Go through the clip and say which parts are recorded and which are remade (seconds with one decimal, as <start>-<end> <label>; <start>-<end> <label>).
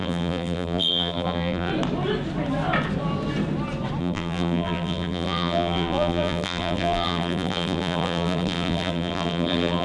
0.0-1.7 remade; 1.7-4.0 recorded; 4.0-9.8 remade